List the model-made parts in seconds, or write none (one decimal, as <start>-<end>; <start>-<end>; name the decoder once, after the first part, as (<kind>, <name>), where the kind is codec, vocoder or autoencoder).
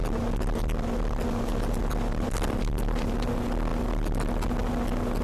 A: 0.0-3.1 (vocoder, BigVGAN v2)